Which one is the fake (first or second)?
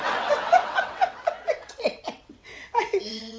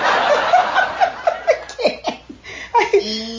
first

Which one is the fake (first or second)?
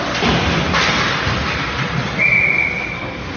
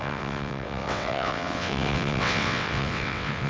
second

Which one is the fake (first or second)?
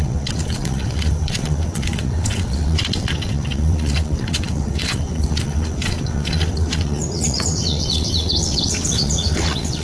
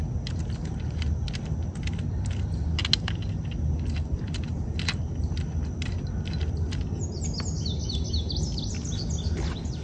first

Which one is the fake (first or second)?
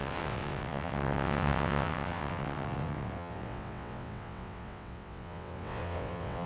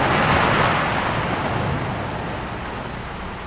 first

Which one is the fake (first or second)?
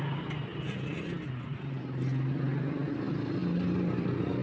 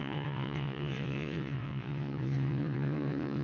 second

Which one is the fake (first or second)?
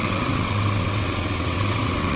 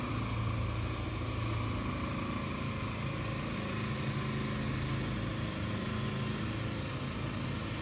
first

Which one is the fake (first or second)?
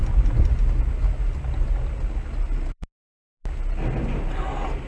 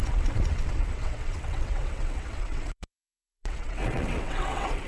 second